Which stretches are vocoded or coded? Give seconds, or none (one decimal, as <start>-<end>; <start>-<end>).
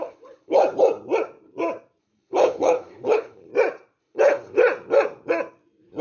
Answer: 0.0-0.6; 2.0-3.5; 4.0-4.6